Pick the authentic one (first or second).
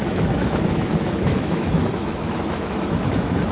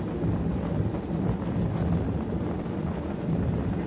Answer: second